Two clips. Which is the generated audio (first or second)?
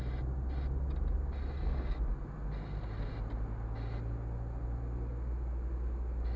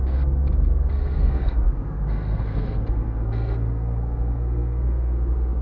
second